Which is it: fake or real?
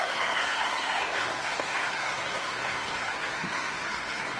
fake